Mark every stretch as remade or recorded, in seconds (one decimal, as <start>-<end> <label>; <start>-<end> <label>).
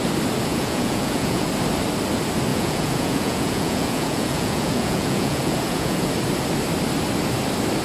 0.0-0.5 recorded; 0.5-1.5 remade; 1.5-2.5 recorded; 2.5-6.1 remade; 6.1-7.8 recorded